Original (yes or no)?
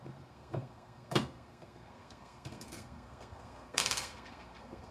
no